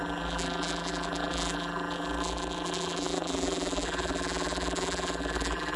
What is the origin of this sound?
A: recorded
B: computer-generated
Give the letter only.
B